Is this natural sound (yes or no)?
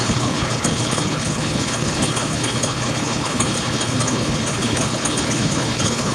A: no